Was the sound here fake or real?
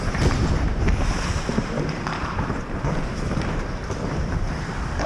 fake